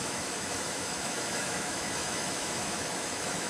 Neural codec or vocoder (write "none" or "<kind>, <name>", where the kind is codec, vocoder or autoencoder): autoencoder, DAC-VAE